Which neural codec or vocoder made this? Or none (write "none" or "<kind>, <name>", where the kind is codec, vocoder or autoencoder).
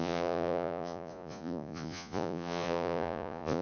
vocoder, Vocos